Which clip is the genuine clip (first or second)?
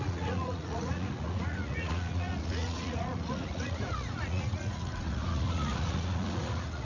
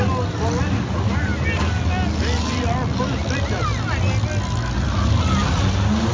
second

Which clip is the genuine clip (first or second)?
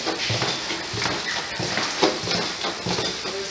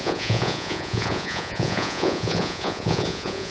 first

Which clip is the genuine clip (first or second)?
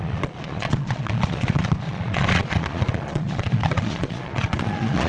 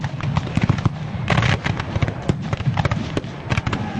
second